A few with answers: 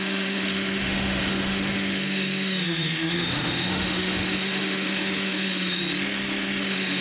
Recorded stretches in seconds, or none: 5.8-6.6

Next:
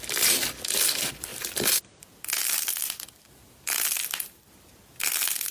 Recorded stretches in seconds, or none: 0.0-5.5

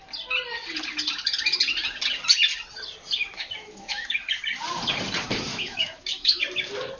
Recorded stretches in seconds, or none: 0.0-3.2; 4.4-5.5; 6.4-7.0

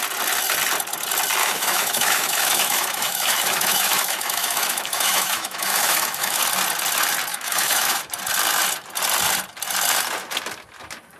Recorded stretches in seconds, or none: 0.0-1.4; 6.4-7.3; 8.0-11.2

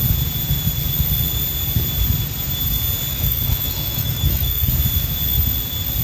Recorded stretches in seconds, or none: 0.0-3.1; 4.7-6.0